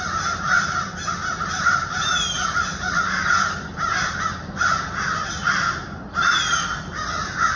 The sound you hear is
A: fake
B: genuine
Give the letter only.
B